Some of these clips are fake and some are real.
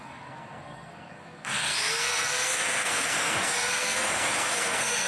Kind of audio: fake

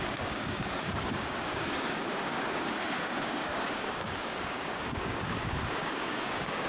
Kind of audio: fake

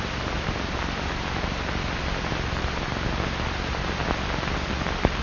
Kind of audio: real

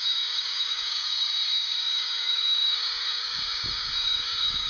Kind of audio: fake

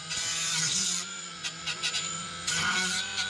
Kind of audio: fake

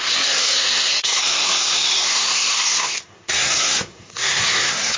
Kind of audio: fake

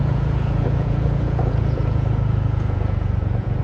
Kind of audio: fake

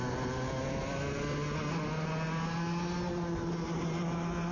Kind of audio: real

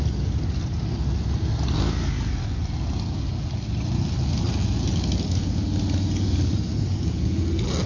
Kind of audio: real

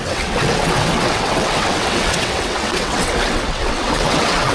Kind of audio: fake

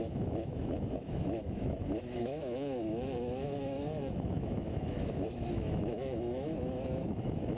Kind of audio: fake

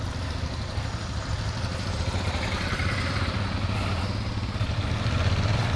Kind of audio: real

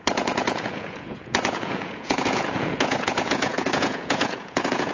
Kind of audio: fake